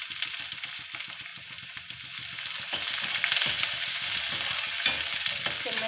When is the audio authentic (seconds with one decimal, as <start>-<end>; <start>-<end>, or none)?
0.0-5.9